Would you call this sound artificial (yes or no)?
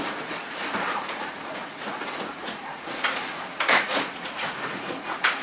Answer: yes